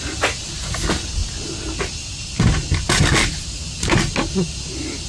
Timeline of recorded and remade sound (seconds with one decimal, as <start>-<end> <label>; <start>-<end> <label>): 0.0-5.1 recorded